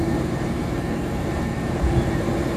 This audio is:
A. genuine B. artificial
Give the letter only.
B